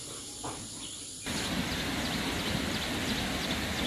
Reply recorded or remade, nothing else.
recorded